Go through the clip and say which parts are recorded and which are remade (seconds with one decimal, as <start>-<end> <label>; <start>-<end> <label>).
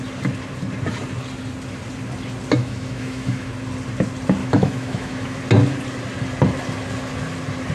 0.0-2.6 recorded; 2.6-3.5 remade; 3.5-4.4 recorded; 4.4-5.4 remade; 5.4-7.7 recorded